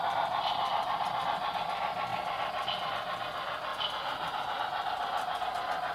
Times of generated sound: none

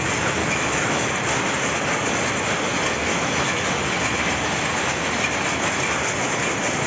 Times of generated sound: 0.4-1.1 (autoencoder, DAC-VAE); 3.1-3.7